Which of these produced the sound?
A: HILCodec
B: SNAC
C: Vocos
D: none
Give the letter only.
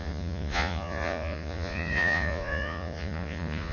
C